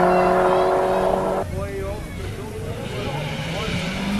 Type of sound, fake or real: real